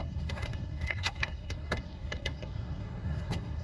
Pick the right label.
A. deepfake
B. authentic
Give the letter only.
A